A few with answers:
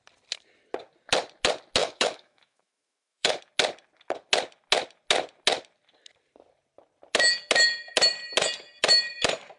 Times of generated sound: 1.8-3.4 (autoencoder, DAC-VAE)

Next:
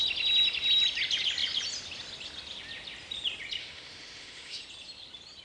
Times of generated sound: 3.6-4.6 (autoencoder, DAC-VAE)

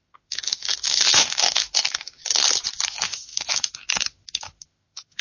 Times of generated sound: 0.0-2.2 (autoencoder, DAC-VAE); 2.9-5.2

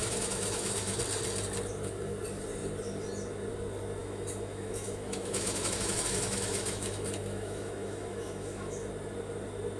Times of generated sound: 0.0-1.0 (autoencoder, DAC-VAE); 4.0-8.9

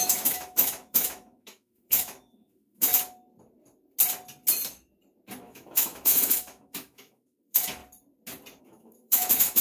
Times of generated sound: 0.0-2.9 (autoencoder, DAC-VAE); 5.4-7.8; 8.6-9.6

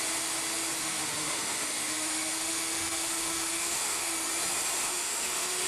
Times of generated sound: 0.8-4.1 (autoencoder, DAC-VAE); 4.8-5.7

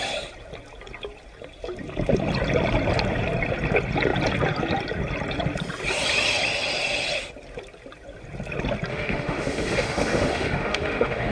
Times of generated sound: 8.9-11.3 (autoencoder, DAC-VAE)

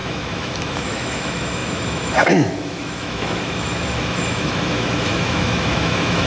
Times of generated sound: 0.0-6.3 (autoencoder, DAC-VAE)